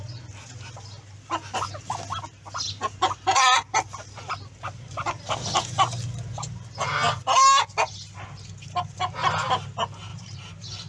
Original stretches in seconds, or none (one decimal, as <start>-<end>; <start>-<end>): 0.0-10.1